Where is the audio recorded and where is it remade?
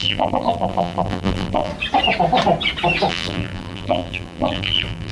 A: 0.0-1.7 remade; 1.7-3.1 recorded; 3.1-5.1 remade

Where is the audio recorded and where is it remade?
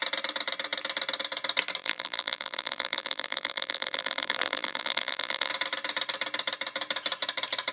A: 0.0-1.8 recorded; 1.8-5.5 remade; 5.5-7.7 recorded